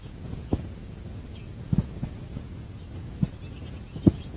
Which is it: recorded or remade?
remade